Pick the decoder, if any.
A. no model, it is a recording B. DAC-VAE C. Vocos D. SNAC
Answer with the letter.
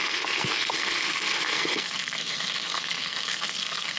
D